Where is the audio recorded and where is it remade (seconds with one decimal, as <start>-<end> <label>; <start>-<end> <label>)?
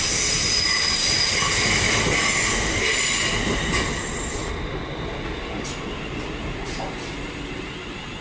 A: 0.0-8.2 recorded